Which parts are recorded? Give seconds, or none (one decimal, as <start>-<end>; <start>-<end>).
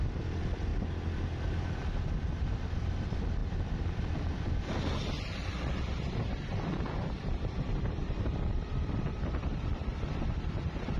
0.7-1.5; 3.4-7.8